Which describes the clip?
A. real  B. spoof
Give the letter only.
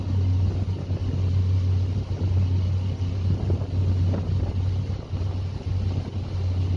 A